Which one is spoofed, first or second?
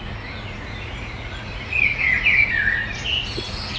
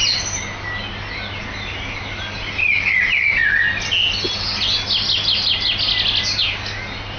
first